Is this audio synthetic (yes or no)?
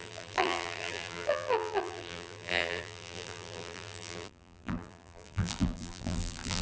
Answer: yes